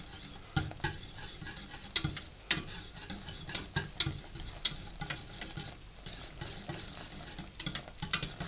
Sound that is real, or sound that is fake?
real